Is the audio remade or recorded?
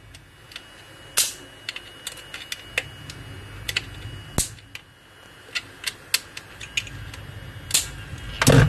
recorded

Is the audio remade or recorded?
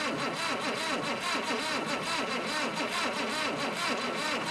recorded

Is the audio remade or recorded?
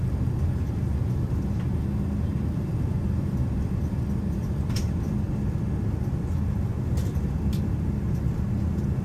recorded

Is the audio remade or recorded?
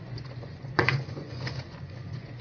remade